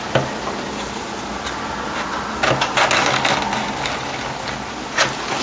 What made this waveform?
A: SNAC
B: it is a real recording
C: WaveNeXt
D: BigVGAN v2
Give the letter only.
B